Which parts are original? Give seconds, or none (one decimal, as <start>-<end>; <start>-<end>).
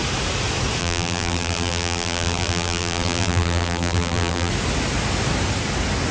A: 0.0-0.8; 4.5-6.1